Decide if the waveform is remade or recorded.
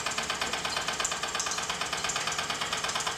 recorded